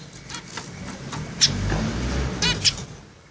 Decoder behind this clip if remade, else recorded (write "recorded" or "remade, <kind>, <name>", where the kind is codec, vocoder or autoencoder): recorded